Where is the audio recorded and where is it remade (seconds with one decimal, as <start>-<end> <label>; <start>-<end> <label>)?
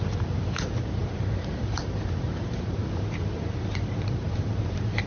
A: 0.0-5.1 remade